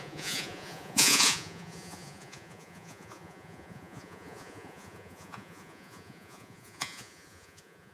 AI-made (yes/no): yes